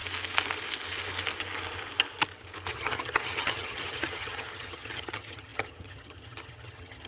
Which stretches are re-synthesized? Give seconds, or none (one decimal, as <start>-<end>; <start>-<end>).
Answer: 2.7-7.1